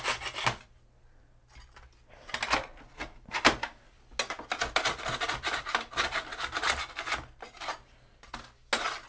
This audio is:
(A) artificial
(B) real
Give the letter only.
B